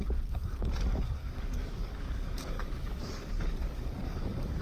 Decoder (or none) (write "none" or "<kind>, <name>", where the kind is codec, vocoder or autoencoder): codec, DAC